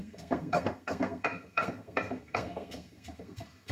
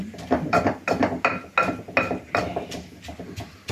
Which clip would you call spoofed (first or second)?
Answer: first